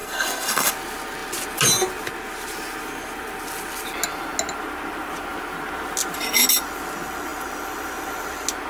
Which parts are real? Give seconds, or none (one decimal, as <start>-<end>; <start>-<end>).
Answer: 0.7-8.7